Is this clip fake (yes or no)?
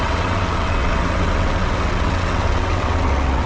yes